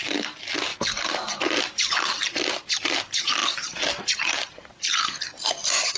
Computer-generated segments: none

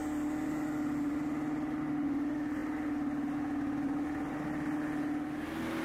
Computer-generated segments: none

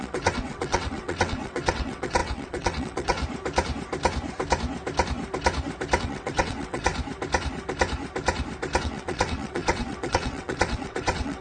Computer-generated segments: 0.0-3.2; 6.0-6.9; 8.8-11.4